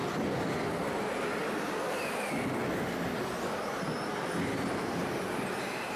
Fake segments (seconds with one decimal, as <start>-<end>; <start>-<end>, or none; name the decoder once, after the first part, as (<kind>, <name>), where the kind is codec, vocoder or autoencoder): none